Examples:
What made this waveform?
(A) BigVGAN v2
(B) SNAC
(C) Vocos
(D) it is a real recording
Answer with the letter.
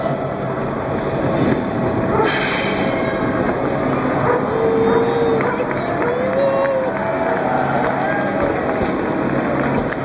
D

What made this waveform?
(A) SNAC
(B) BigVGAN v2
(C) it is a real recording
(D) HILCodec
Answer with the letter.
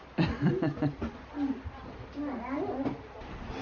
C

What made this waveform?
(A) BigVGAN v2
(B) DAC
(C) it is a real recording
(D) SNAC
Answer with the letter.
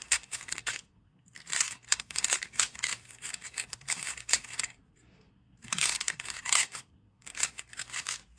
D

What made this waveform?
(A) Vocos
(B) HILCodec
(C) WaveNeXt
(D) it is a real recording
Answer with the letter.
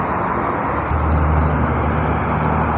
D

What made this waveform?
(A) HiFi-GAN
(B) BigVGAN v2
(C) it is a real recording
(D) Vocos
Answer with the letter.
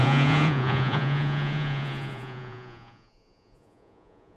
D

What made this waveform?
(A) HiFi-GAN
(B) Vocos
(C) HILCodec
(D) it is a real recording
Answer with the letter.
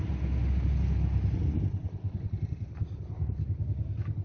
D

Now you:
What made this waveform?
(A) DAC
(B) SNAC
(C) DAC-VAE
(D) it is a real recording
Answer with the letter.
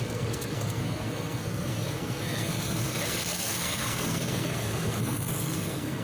B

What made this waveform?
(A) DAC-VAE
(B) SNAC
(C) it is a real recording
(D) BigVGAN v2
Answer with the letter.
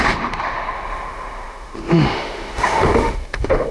A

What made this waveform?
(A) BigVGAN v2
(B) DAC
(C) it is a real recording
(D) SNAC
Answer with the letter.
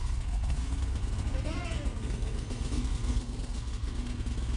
D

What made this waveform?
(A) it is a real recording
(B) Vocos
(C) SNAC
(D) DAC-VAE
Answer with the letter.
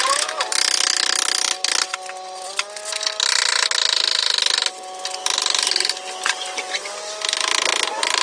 A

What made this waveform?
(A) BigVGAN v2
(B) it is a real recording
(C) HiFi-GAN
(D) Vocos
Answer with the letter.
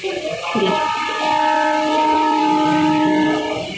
B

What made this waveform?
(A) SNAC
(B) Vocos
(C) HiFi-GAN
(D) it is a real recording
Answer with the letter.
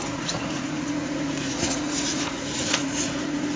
B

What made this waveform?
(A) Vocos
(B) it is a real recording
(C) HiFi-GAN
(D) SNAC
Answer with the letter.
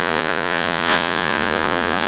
A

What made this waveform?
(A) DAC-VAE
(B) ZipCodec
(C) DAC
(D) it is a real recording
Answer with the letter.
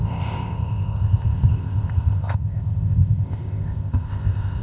B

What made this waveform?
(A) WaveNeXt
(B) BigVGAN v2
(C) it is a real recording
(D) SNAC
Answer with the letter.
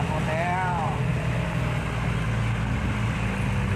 C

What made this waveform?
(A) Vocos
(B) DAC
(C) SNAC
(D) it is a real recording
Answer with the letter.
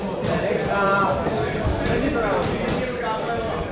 D